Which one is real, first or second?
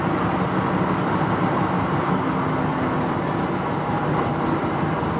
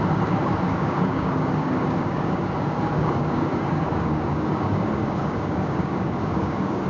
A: first